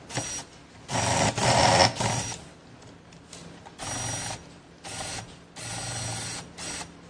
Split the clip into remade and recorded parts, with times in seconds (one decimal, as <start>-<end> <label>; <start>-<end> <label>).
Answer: 0.0-7.1 recorded